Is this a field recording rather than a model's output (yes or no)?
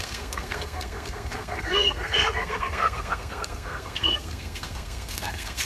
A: no